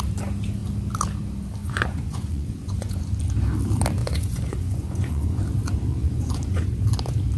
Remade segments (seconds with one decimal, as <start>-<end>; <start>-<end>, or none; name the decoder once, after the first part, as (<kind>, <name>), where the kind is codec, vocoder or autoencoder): 1.6-3.0 (vocoder, Vocos); 4.0-5.4; 5.9-6.7